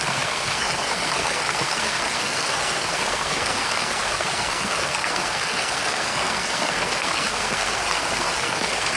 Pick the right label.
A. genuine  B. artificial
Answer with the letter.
B